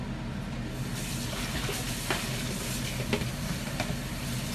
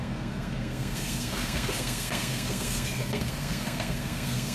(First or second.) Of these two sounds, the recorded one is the first